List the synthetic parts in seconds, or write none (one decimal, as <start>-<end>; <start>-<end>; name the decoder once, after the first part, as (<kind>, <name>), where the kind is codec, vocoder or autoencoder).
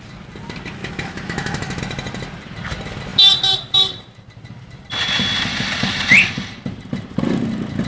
0.8-1.8 (autoencoder, DAC-VAE)